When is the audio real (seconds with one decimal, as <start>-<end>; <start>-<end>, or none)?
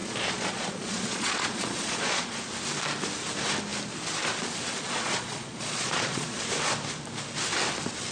2.4-4.7; 6.4-8.1